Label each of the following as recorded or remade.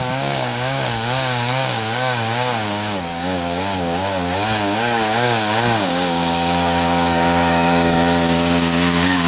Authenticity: remade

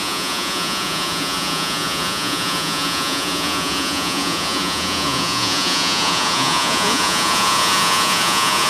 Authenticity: remade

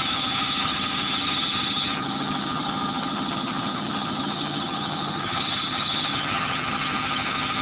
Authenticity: remade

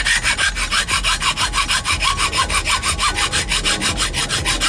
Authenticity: recorded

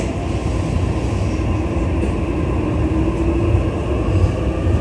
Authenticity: recorded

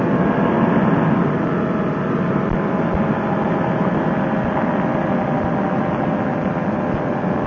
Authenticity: recorded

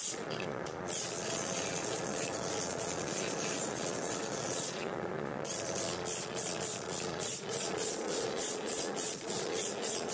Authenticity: remade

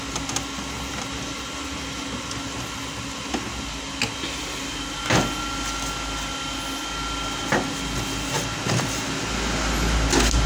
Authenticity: recorded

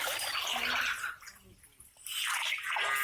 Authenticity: recorded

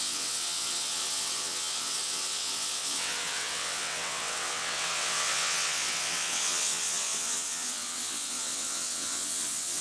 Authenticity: remade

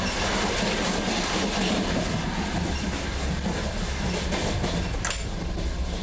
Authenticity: recorded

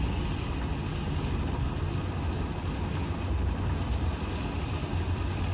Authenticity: recorded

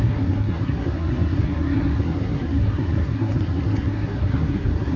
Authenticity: remade